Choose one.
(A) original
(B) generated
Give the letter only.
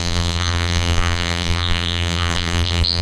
B